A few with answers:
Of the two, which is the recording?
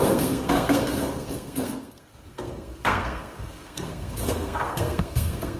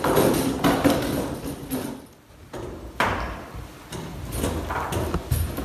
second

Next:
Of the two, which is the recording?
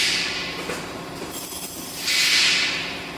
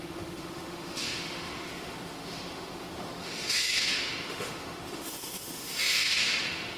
first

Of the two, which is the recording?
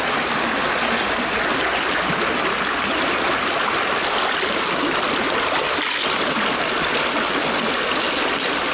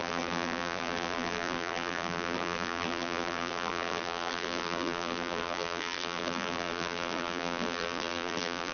first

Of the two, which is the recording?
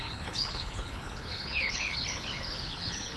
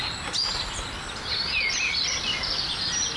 second